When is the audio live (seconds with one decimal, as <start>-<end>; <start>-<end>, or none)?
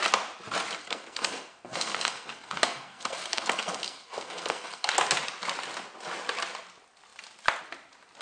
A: 0.0-0.8; 4.9-8.2